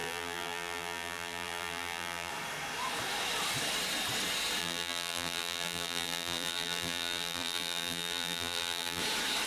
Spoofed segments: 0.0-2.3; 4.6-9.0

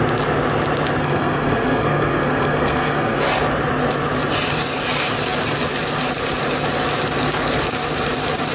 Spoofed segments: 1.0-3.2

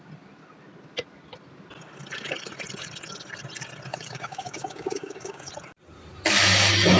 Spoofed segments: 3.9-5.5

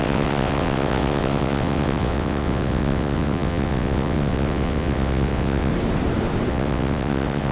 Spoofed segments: 0.0-5.7; 6.5-7.5

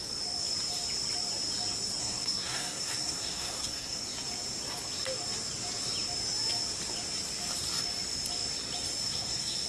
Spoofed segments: 2.0-4.0; 9.0-9.7

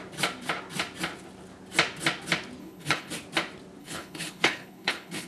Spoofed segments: 2.6-3.1; 3.8-5.3

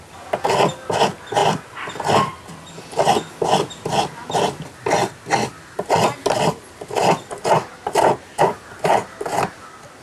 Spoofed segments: none

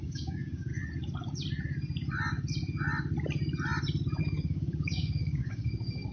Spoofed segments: 0.0-0.7; 4.2-6.1